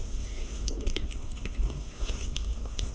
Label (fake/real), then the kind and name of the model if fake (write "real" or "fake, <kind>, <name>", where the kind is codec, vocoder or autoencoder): fake, codec, SNAC